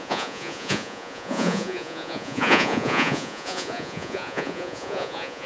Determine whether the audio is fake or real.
fake